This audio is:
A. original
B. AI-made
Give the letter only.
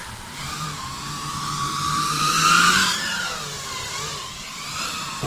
B